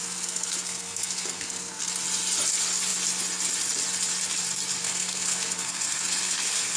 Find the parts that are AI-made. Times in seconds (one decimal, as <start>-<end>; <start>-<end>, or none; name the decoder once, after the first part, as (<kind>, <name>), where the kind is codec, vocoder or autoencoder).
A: 0.0-1.9 (codec, SNAC); 4.8-6.8